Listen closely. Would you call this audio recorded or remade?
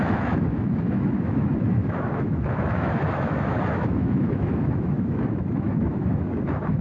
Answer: remade